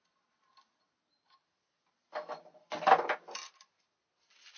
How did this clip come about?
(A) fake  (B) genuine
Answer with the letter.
B